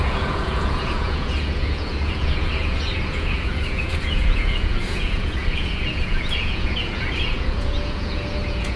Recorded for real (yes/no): no